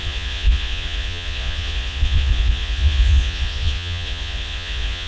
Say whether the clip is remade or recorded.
remade